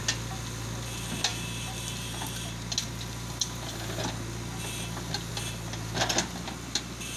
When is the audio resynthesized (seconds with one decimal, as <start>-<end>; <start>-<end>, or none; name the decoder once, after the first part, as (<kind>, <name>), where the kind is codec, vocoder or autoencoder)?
none